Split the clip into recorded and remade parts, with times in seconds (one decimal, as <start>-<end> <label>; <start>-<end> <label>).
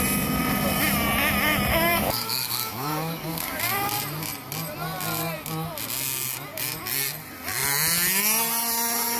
0.0-1.7 recorded; 1.7-3.6 remade; 3.6-9.2 recorded